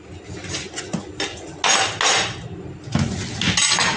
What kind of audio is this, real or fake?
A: real